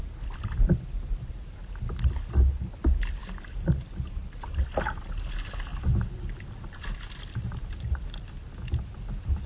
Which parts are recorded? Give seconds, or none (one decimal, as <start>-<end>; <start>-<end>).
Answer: 0.0-9.5